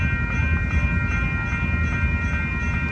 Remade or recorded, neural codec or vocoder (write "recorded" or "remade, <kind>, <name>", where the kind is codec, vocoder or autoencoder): recorded